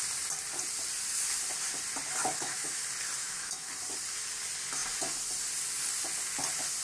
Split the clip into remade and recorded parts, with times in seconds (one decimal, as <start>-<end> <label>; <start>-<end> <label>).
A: 0.0-2.2 recorded; 2.2-2.8 remade; 2.8-3.2 recorded; 3.2-3.7 remade; 3.7-6.8 recorded